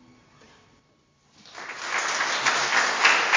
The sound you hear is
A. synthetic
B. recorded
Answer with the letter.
B